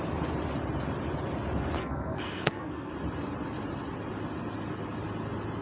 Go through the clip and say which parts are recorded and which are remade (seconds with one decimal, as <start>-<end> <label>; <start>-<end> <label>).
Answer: 0.0-1.8 recorded; 1.8-2.9 remade; 2.9-5.6 recorded